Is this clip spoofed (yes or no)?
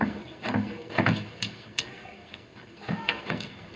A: yes